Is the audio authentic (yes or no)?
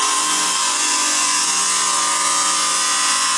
no